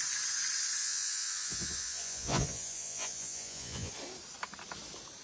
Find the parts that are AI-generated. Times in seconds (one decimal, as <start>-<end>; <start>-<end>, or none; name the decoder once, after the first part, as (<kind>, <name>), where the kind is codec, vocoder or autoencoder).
0.8-3.9 (vocoder, Vocos)